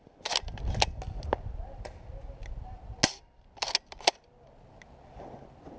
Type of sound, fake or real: real